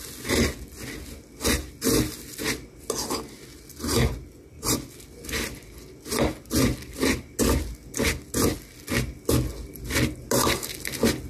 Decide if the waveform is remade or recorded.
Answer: recorded